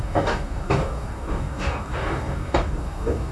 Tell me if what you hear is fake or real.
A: fake